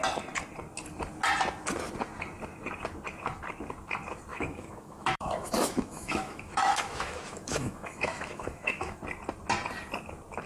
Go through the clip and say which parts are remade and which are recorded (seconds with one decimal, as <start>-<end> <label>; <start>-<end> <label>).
0.0-4.3 recorded; 4.3-9.0 remade; 9.0-10.5 recorded